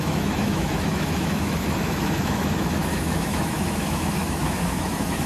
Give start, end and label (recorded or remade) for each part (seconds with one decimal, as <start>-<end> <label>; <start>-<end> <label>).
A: 0.0-5.3 remade